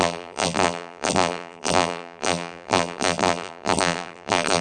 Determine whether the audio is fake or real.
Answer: fake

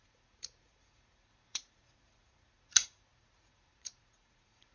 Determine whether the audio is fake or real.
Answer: fake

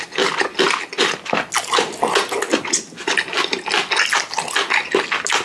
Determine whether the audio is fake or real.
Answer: real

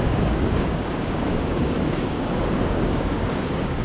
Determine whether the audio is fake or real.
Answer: fake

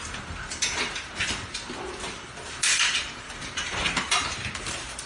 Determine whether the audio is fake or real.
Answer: fake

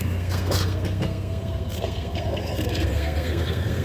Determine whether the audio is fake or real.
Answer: fake